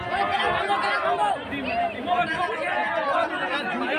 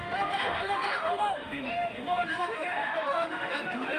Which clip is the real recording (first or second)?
first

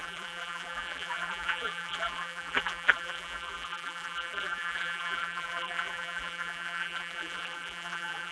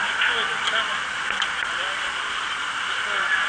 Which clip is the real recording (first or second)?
second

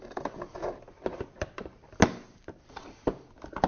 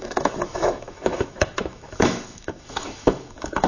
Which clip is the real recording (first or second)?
first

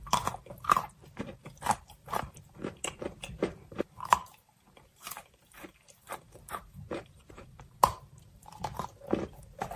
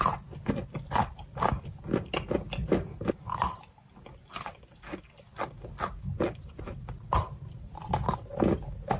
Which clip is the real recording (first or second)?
second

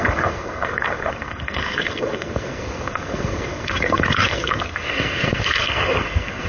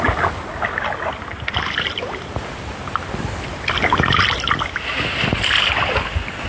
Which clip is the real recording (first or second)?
second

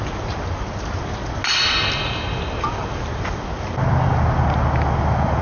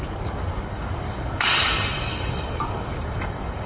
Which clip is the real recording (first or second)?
first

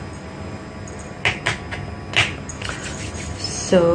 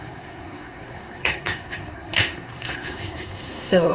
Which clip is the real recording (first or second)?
first